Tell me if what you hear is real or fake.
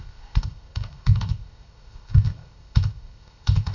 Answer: fake